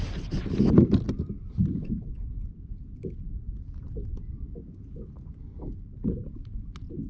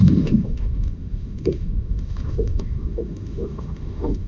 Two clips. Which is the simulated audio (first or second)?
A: second